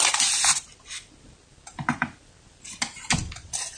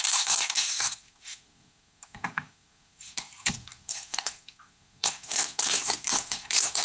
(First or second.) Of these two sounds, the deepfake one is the second